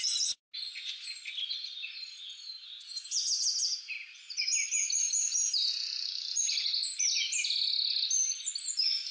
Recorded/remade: recorded